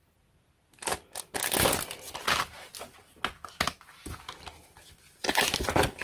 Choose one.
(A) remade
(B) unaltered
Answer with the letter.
B